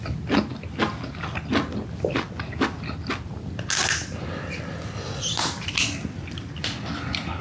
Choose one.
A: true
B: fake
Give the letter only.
A